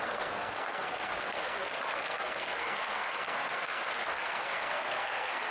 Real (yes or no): no